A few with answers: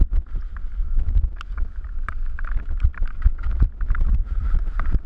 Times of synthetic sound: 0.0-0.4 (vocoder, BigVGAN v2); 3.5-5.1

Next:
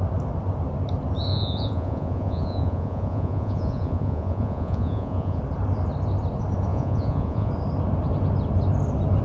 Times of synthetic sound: 1.3-5.4 (vocoder, Vocos); 6.7-7.5

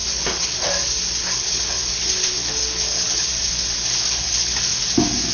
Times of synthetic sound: 0.0-0.7 (codec, HILCodec); 1.2-3.3; 3.8-4.6

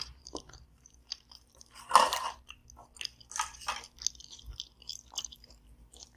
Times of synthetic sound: 0.0-2.6 (vocoder, BigVGAN v2); 5.2-6.2

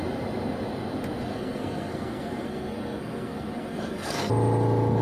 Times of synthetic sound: 1.3-4.3 (codec, SNAC)

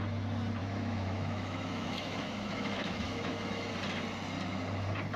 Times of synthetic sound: 0.6-3.7 (autoencoder, DAC-VAE)

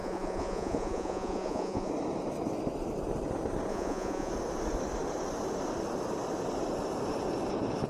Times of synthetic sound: 0.0-1.9 (vocoder, Vocos); 3.7-4.3